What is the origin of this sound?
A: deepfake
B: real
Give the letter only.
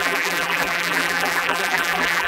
A